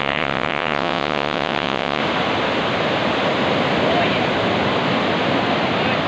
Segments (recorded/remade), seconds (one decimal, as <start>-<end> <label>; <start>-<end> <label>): 0.0-2.0 remade; 2.0-6.1 recorded